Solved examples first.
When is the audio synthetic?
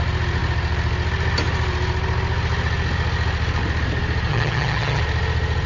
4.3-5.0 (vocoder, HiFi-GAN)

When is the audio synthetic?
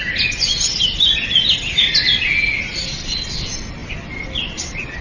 none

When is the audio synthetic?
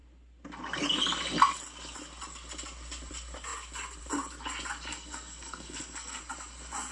4.9-6.2 (codec, SNAC)